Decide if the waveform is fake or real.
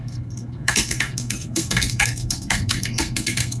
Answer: fake